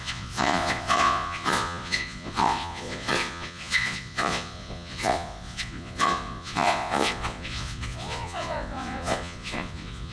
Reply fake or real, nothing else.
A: fake